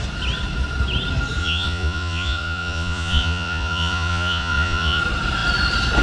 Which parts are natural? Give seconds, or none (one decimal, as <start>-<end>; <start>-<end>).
0.0-1.4; 5.0-6.0